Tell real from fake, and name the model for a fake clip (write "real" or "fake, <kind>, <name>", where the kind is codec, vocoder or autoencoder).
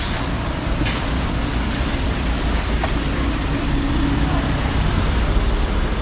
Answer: fake, vocoder, BigVGAN v2